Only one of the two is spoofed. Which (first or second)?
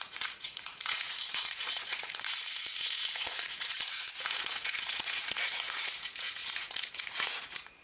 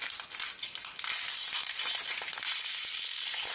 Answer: first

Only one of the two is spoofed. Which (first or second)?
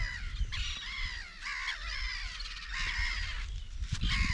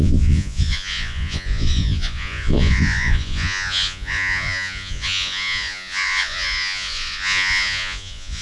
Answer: second